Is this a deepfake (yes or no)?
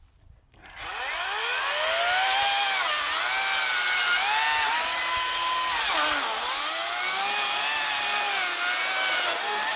no